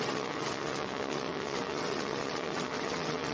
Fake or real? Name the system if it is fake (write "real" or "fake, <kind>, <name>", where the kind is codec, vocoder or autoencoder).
fake, vocoder, WaveNeXt